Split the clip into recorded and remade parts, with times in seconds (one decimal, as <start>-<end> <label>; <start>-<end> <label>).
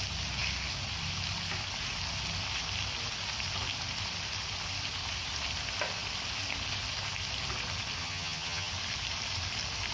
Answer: 0.0-8.0 recorded; 8.0-8.7 remade; 8.7-9.9 recorded